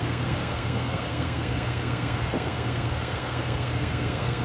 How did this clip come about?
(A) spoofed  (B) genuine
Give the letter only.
A